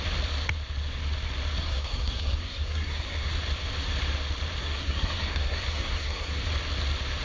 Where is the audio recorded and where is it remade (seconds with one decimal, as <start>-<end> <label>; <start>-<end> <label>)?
0.0-1.6 recorded; 1.6-3.3 remade; 3.3-4.6 recorded; 4.6-6.3 remade; 6.3-7.2 recorded